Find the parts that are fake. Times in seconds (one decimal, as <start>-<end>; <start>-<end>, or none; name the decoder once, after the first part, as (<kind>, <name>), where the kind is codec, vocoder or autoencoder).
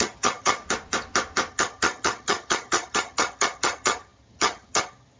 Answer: 0.0-0.6 (vocoder, HiFi-GAN); 1.5-5.2